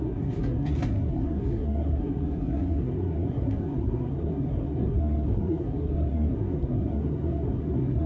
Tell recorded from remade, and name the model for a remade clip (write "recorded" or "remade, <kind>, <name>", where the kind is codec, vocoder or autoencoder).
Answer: remade, codec, SNAC